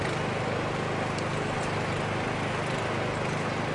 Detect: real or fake real